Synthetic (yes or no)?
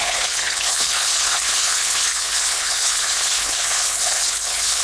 yes